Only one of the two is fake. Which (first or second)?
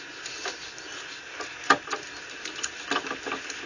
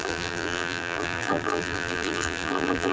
second